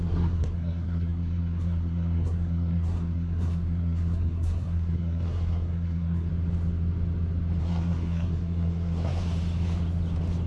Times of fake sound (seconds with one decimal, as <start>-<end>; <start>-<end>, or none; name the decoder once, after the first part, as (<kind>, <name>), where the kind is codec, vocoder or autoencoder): 0.0-6.3 (codec, SNAC); 7.6-9.2